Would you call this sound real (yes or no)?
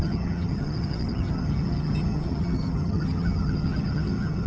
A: no